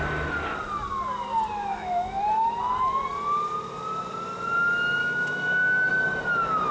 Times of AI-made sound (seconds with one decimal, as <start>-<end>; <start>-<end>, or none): 1.6-2.2; 5.0-5.9